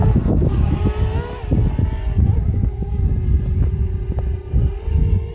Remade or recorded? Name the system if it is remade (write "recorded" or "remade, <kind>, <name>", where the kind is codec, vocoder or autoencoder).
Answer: recorded